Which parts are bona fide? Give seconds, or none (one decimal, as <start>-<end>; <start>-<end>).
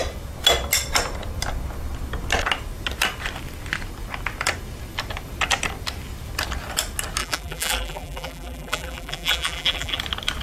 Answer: 0.0-7.2; 10.0-10.4